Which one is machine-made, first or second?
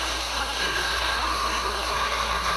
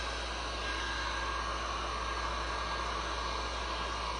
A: first